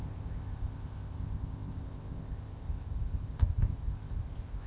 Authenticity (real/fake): fake